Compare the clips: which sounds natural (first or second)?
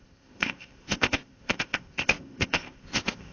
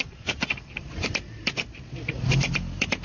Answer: second